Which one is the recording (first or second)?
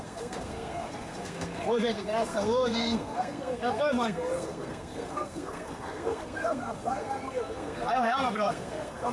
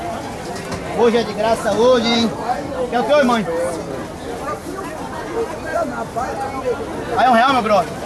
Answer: second